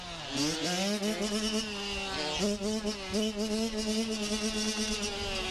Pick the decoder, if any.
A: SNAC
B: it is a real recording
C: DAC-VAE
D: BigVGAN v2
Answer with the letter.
B